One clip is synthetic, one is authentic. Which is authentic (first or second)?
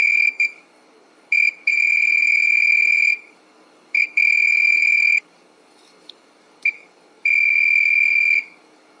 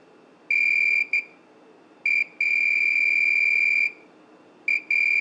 second